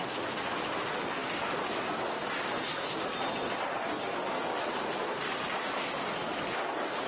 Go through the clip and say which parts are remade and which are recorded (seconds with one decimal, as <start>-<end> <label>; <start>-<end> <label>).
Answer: 0.0-7.1 recorded